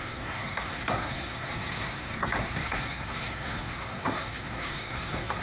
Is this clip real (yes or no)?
no